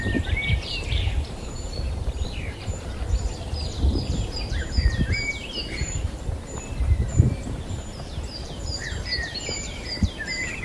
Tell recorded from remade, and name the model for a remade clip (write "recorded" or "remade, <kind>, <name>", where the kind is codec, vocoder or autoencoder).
remade, vocoder, BigVGAN v2